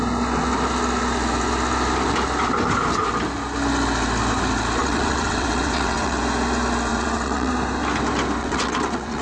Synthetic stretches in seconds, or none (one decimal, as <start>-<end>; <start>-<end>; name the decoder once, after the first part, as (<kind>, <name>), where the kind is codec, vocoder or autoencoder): 4.8-6.2 (vocoder, WaveNeXt); 6.9-7.5; 8.4-9.2